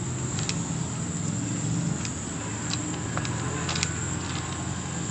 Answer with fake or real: real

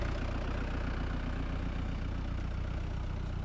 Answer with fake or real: real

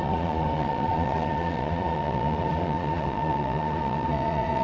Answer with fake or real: fake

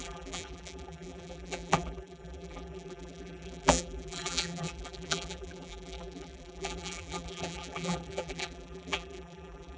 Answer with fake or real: fake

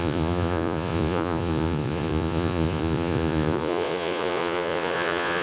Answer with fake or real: fake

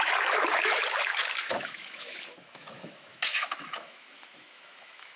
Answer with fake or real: fake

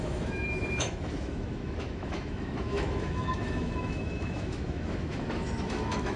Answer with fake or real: fake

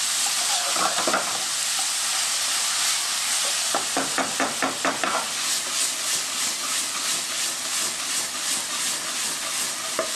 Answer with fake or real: real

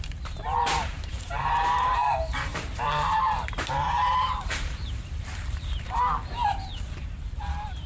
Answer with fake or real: fake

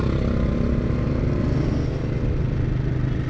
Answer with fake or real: real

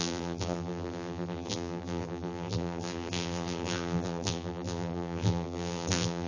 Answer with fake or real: fake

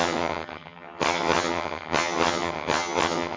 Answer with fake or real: fake